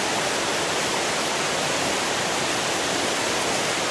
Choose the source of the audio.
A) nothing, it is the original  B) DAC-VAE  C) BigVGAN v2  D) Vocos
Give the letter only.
A